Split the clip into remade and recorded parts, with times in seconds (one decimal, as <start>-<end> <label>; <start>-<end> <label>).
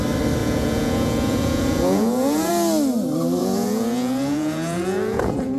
0.0-0.4 recorded; 0.4-2.5 remade; 2.5-3.4 recorded; 3.4-5.6 remade